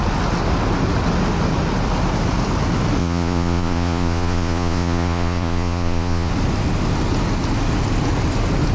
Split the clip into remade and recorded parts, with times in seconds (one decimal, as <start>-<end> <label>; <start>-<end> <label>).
0.0-3.0 recorded; 3.0-6.3 remade; 6.3-8.7 recorded